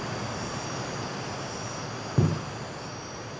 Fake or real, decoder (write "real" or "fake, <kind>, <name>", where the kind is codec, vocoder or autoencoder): real